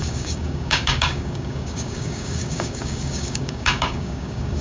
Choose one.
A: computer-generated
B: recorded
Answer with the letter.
A